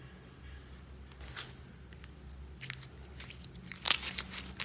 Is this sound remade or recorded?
recorded